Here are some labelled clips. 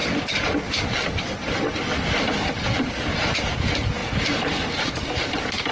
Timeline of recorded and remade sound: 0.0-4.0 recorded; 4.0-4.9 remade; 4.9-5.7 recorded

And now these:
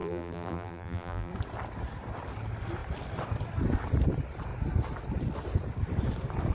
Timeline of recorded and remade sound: 0.0-1.3 remade; 1.3-6.5 recorded

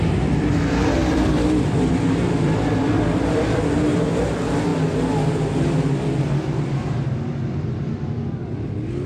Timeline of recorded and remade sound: 0.0-1.0 recorded; 1.0-3.7 remade; 3.7-9.1 recorded

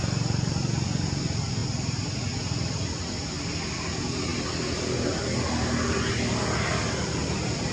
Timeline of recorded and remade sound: 0.0-7.7 recorded

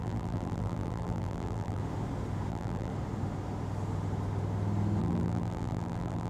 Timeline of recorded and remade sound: 0.0-1.8 remade; 1.8-2.5 recorded; 2.5-2.9 remade; 2.9-5.0 recorded; 5.0-6.3 remade

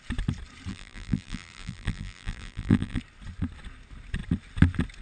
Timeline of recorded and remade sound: 0.0-0.7 recorded; 0.7-3.0 remade; 3.0-5.0 recorded